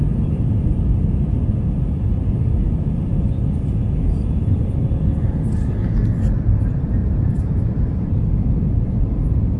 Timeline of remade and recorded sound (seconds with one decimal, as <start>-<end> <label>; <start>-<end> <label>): 0.0-7.0 recorded; 7.0-8.1 remade; 8.1-9.6 recorded